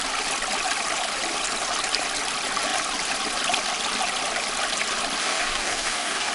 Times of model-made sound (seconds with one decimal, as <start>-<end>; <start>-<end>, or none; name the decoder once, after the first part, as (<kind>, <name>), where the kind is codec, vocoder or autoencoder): 5.2-6.3 (codec, DAC)